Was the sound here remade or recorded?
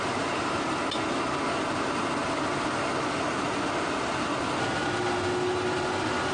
recorded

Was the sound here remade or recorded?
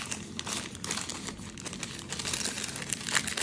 recorded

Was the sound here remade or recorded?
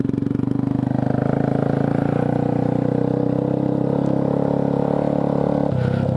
recorded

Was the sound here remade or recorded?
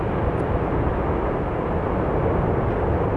recorded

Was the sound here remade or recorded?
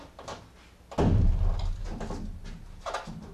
recorded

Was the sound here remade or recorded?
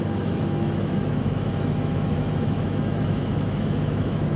remade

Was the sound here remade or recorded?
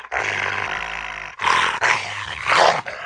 recorded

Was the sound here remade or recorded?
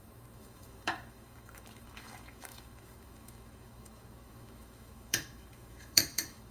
remade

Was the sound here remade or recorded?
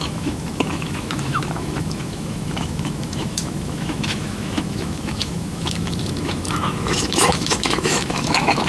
remade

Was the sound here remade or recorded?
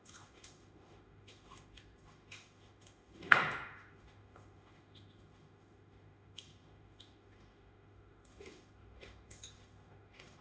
remade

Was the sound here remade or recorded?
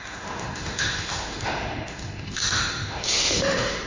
remade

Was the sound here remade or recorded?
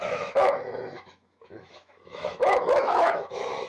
remade